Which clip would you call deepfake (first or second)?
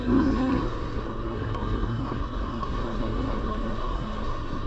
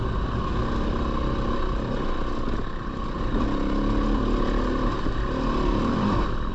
first